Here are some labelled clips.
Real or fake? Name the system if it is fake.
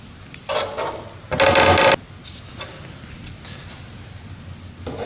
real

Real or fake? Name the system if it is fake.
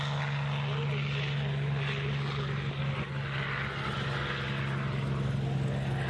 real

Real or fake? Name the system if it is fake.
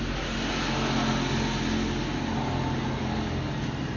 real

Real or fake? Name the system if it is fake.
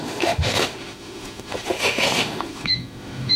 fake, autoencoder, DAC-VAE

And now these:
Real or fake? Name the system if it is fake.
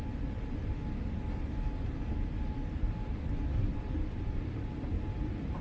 real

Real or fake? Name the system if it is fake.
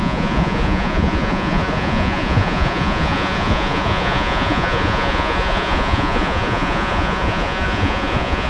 fake, vocoder, Vocos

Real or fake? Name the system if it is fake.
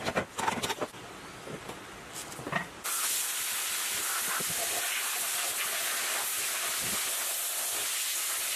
real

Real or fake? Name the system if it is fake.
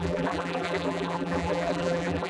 fake, vocoder, BigVGAN v2